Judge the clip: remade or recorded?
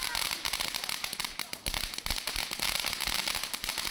recorded